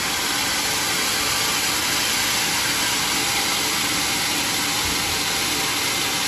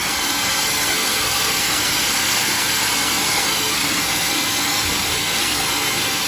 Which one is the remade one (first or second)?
second